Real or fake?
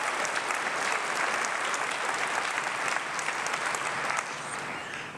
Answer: real